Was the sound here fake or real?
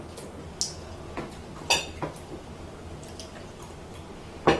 real